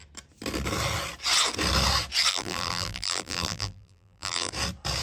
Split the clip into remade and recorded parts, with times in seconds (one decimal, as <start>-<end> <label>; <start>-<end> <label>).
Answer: 0.0-2.3 recorded; 2.3-4.5 remade; 4.5-5.0 recorded